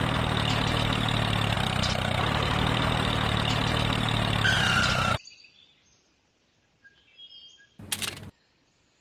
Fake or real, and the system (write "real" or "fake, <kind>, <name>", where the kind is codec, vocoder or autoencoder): real